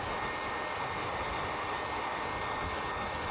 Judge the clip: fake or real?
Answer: real